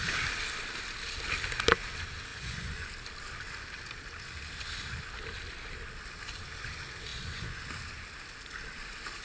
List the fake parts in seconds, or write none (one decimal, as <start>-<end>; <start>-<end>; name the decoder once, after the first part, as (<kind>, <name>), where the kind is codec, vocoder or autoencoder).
2.3-2.9 (vocoder, Vocos); 7.1-7.6